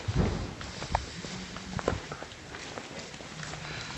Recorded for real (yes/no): yes